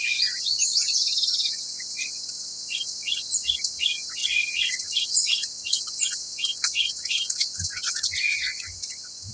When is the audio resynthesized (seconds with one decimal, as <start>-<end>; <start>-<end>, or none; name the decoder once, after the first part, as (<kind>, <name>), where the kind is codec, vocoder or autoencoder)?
0.0-9.3 (vocoder, Vocos)